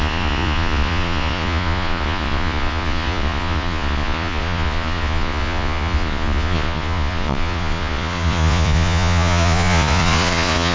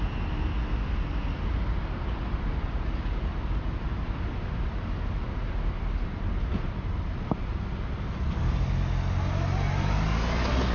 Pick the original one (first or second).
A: second